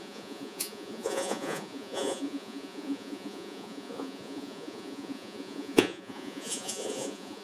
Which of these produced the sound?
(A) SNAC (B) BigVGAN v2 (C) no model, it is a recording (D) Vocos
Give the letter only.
D